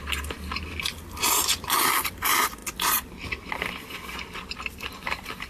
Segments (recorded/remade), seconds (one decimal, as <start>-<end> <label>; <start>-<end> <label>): 0.0-5.5 recorded